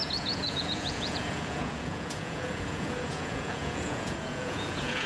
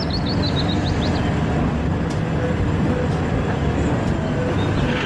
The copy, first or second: first